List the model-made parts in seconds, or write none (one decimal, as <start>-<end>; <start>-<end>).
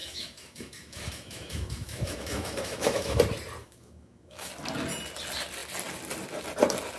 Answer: 0.0-3.2; 3.6-4.5